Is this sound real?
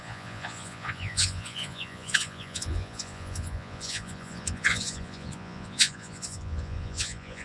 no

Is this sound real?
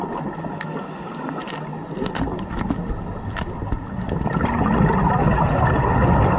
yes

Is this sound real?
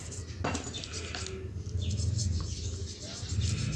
yes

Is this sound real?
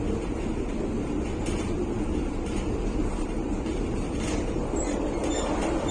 no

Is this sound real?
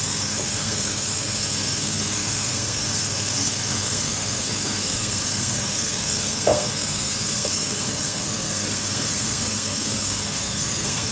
no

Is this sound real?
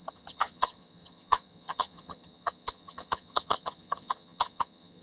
no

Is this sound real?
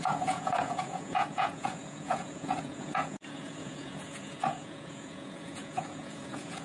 no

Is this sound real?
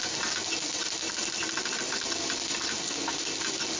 yes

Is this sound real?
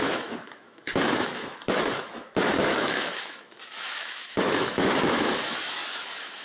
no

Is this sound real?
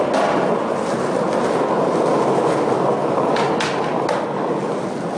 yes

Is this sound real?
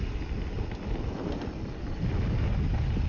yes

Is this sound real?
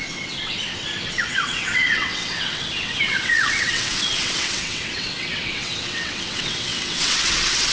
no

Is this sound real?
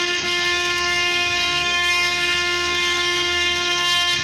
no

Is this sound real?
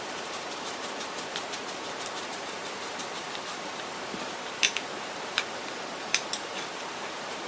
no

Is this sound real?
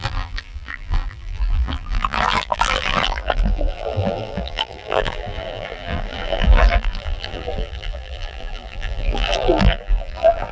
no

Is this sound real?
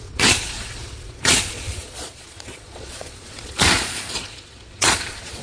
no